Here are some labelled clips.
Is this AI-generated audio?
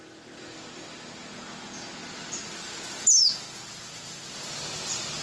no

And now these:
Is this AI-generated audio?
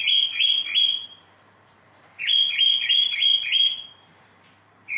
yes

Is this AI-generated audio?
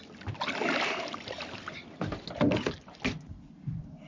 no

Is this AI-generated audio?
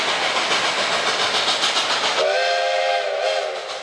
no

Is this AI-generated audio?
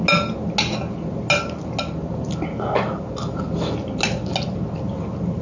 no